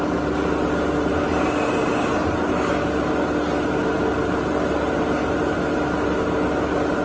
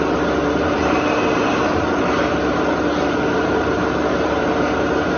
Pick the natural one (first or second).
first